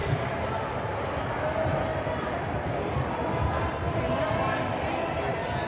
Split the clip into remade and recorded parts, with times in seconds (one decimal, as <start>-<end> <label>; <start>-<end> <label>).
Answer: 0.0-1.9 recorded; 1.9-3.7 remade; 3.7-5.7 recorded